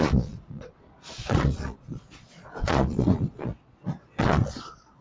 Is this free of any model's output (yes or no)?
no